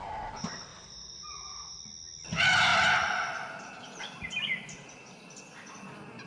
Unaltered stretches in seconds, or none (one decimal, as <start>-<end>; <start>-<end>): 0.0-0.7; 1.8-6.3

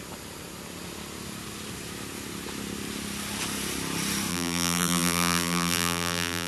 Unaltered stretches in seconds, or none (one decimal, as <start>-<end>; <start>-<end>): 0.0-4.3

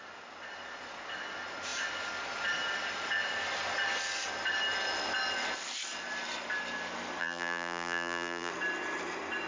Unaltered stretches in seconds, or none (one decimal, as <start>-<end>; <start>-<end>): 0.0-7.2; 8.5-9.5

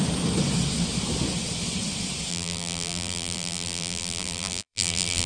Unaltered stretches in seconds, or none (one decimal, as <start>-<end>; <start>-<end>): 0.0-2.3

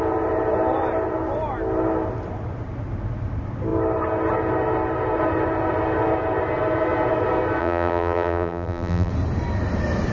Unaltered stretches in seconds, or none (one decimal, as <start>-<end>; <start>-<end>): 0.0-7.6; 9.1-10.1

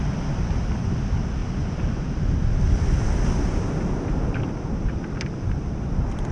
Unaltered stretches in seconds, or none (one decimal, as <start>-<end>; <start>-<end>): 0.0-6.3

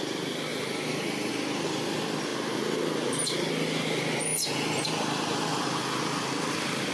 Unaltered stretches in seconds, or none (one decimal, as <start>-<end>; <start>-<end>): 0.0-0.5; 1.3-6.9

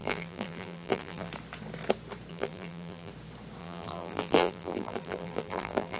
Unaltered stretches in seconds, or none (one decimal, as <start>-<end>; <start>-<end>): 1.3-2.3; 3.1-3.6